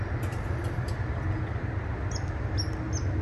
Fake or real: real